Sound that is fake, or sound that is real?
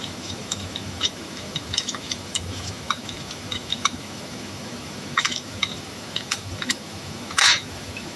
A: fake